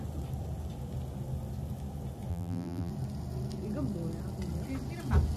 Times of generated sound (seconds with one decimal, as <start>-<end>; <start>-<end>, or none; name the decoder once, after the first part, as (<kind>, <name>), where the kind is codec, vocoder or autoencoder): 2.3-2.9 (vocoder, BigVGAN v2)